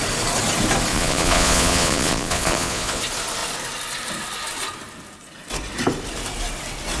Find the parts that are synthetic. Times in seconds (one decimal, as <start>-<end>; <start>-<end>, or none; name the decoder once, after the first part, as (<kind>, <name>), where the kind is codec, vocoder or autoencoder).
0.9-3.0 (vocoder, Vocos)